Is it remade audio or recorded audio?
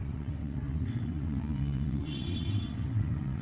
remade